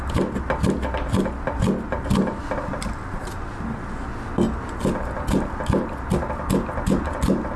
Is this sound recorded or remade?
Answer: recorded